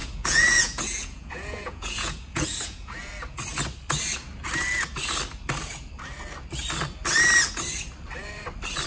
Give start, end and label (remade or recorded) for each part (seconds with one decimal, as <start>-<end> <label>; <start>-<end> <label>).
0.0-3.1 remade; 3.1-8.9 recorded